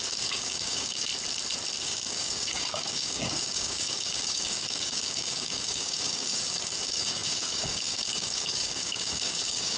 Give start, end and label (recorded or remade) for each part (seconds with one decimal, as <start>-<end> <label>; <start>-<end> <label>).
0.0-1.1 remade; 1.1-1.8 recorded; 1.8-9.8 remade